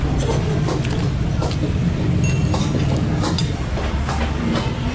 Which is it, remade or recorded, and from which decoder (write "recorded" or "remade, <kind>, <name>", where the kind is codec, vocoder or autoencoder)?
recorded